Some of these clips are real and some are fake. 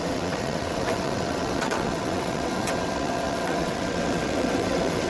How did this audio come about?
fake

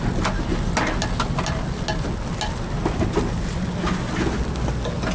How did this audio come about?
real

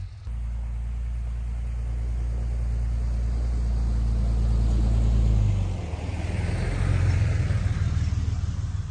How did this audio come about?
real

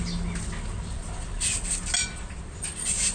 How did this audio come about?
real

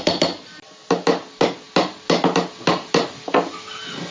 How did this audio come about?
real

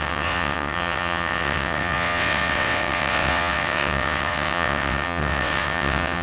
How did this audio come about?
fake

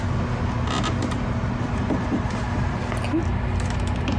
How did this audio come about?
real